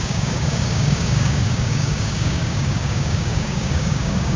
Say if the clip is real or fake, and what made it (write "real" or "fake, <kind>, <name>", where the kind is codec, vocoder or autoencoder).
fake, codec, DAC